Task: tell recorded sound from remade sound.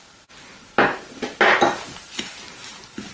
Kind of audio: recorded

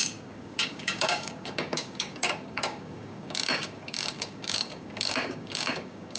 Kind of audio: remade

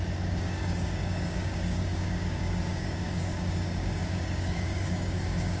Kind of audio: remade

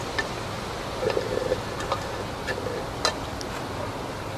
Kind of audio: recorded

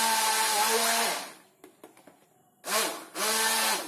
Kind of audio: recorded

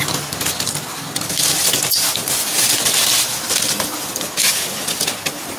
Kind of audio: recorded